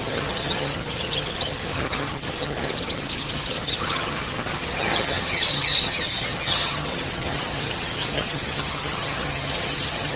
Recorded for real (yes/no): no